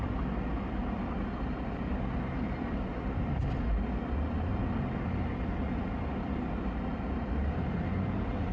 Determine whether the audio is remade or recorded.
recorded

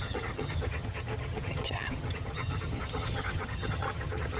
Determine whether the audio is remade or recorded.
remade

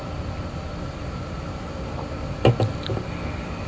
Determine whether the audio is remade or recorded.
recorded